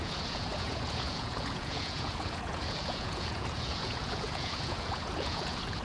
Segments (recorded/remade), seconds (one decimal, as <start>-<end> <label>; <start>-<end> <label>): 0.0-5.8 remade